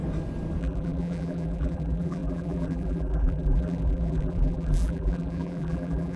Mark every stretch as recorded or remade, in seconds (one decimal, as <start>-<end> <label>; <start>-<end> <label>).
0.0-0.6 recorded; 0.6-6.2 remade